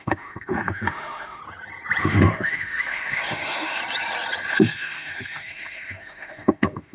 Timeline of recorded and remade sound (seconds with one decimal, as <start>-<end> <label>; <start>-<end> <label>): 0.0-1.4 remade; 1.4-2.0 recorded; 2.0-3.8 remade; 3.8-4.5 recorded; 4.5-6.9 remade